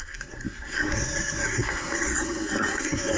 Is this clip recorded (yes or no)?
no